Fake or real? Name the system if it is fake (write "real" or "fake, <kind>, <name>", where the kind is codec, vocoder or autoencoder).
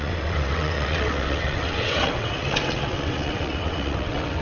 fake, vocoder, WaveNeXt